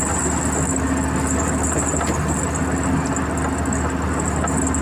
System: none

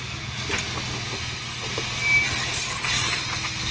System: none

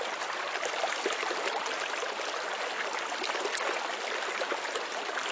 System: none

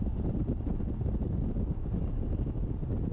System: none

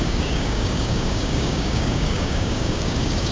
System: codec, DAC